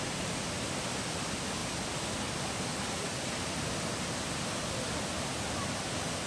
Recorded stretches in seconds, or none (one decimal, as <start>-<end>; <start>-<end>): 0.0-6.3